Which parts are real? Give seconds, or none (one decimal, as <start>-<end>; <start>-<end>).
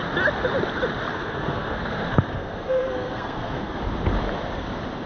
0.0-1.1; 3.8-5.1